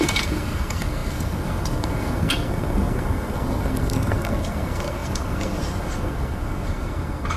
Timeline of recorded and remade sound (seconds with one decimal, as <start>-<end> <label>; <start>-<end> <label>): 0.0-7.4 remade